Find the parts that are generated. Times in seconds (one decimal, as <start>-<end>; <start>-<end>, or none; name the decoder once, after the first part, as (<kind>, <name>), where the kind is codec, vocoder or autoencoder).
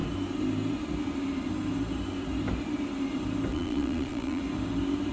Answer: 3.5-4.4 (vocoder, Vocos)